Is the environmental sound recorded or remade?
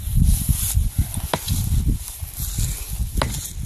recorded